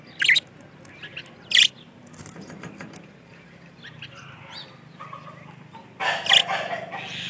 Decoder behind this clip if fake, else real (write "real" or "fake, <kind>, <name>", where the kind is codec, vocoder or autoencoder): real